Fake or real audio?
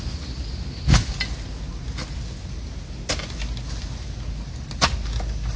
real